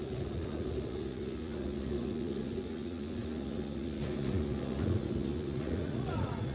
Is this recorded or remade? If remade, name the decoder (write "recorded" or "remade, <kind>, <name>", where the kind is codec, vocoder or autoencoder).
remade, vocoder, Vocos